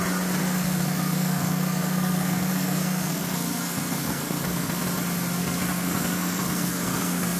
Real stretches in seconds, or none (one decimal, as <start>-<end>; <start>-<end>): 0.0-0.4; 4.8-5.4